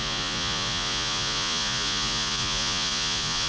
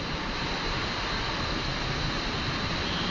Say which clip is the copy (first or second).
first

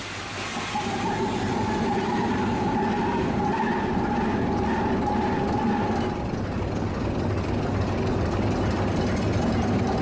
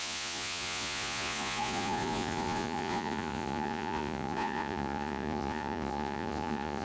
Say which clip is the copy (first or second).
second